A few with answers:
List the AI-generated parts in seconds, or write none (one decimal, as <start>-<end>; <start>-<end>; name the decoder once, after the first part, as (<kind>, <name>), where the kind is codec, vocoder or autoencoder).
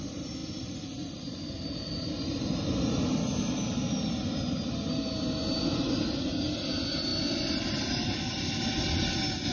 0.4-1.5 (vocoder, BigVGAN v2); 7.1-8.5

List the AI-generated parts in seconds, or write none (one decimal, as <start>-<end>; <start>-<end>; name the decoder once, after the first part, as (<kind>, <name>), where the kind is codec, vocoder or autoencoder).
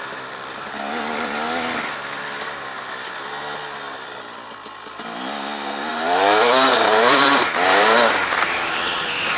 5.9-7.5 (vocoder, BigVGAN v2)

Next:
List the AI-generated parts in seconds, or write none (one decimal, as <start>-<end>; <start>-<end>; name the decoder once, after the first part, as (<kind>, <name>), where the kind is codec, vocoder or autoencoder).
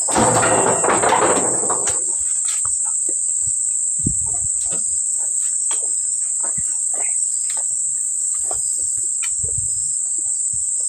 1.8-3.5 (vocoder, BigVGAN v2)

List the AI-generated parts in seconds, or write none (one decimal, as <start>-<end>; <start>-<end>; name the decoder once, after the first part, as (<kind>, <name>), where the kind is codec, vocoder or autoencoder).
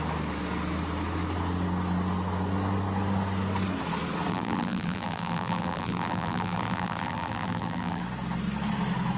4.3-8.0 (vocoder, BigVGAN v2)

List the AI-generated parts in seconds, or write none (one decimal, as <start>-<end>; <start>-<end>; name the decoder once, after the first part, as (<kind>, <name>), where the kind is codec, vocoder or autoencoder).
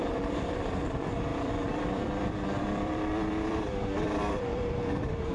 0.0-5.3 (vocoder, BigVGAN v2)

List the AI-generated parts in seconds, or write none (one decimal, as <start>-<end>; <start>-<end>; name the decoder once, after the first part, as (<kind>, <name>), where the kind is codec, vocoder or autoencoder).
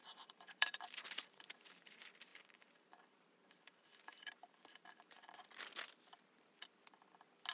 0.0-1.9 (vocoder, BigVGAN v2); 2.3-5.3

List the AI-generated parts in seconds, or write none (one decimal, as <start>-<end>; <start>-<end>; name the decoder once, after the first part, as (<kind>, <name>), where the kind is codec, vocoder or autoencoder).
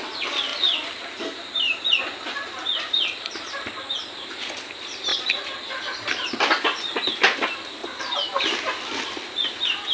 0.5-4.5 (vocoder, BigVGAN v2); 5.1-6.1